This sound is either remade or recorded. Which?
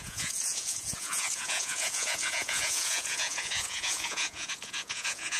remade